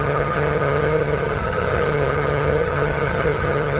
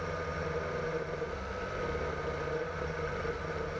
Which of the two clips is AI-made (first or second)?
first